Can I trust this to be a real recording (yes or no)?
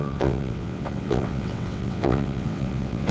no